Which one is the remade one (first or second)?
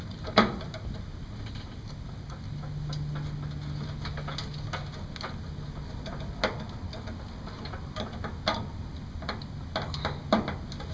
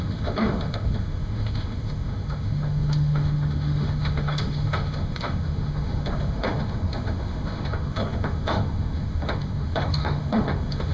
second